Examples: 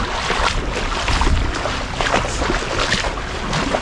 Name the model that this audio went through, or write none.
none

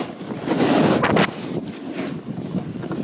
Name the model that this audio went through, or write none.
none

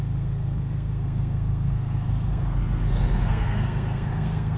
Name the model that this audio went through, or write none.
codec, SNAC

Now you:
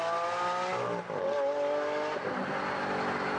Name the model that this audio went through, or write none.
none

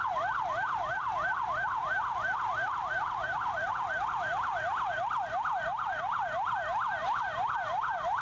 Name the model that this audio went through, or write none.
none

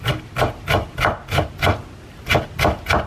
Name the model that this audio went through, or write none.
none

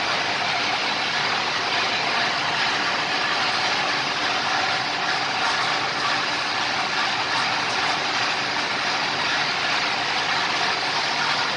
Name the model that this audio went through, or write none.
none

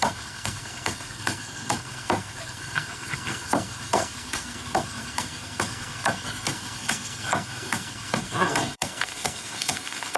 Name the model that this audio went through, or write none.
codec, SNAC